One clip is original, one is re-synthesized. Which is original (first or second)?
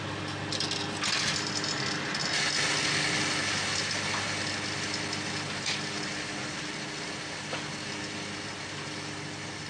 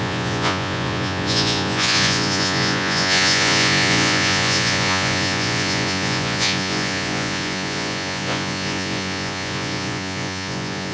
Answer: first